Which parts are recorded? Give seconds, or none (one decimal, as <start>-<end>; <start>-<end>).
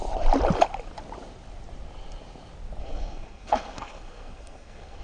0.0-2.8